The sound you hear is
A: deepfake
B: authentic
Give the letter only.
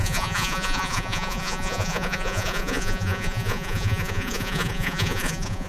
A